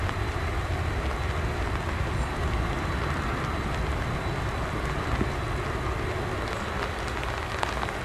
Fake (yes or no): no